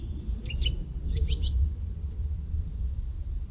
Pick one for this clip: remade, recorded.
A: recorded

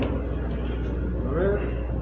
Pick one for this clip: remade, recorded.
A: recorded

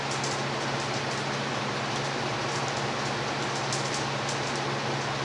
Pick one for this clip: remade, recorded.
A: recorded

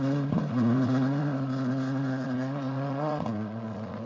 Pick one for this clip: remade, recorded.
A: remade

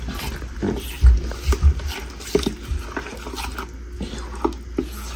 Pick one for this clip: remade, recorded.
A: recorded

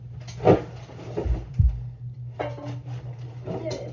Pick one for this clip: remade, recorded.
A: recorded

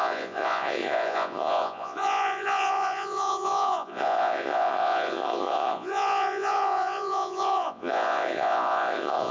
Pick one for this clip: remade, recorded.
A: remade